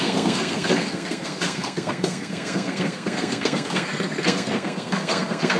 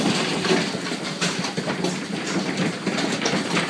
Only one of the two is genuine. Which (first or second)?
second